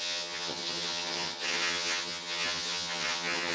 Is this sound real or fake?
fake